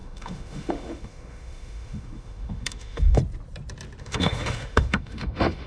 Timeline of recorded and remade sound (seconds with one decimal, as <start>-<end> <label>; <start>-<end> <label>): 0.0-3.2 remade; 3.2-4.0 recorded; 4.0-5.7 remade